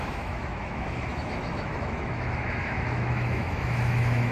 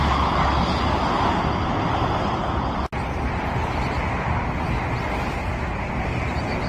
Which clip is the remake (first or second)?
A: first